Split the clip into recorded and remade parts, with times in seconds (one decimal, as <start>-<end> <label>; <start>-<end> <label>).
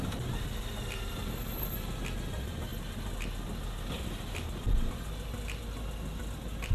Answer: 0.0-6.7 recorded